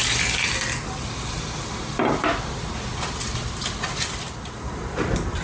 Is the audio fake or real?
real